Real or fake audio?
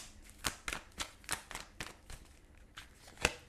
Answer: real